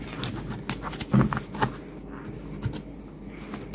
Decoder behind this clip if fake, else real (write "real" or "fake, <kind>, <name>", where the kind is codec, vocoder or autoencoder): real